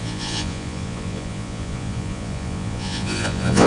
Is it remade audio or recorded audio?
remade